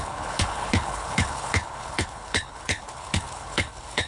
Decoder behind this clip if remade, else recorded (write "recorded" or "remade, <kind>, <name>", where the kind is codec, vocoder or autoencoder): remade, codec, HILCodec